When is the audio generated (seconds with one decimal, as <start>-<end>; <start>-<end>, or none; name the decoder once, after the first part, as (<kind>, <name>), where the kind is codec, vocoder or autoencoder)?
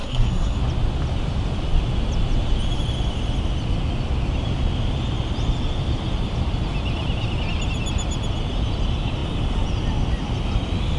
0.0-0.6 (codec, SNAC)